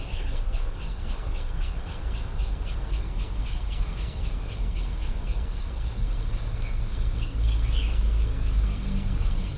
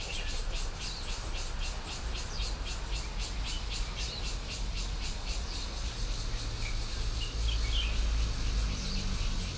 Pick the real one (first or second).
second